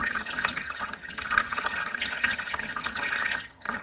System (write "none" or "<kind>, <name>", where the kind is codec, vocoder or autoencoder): vocoder, HiFi-GAN